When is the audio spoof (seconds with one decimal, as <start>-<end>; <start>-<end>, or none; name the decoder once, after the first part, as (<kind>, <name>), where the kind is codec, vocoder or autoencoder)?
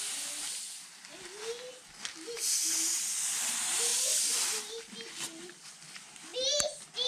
3.9-4.8 (vocoder, BigVGAN v2); 6.3-7.1